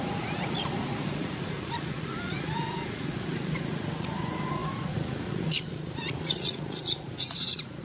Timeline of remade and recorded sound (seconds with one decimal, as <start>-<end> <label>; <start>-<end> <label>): 0.0-7.8 remade